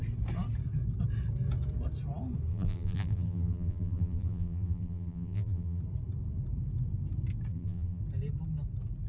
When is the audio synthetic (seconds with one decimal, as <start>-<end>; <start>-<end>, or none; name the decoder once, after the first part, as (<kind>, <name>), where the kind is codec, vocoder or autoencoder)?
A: 2.5-5.8 (vocoder, BigVGAN v2); 7.5-8.0